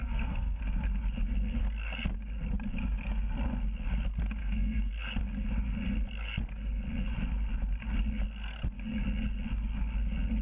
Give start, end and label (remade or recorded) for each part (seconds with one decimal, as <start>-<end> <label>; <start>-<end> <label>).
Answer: 0.0-0.6 remade; 0.6-4.4 recorded; 4.4-4.9 remade; 4.9-10.4 recorded